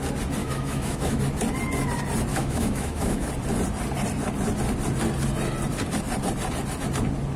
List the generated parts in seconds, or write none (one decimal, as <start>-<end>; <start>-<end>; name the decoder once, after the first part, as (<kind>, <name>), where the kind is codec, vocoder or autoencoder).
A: 0.4-1.2 (autoencoder, DAC-VAE); 2.3-3.3